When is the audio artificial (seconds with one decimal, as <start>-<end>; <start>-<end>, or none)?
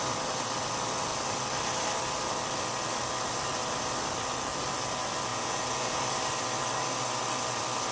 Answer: 5.3-6.0